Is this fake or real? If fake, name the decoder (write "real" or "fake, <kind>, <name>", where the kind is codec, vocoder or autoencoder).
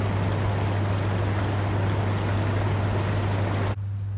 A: real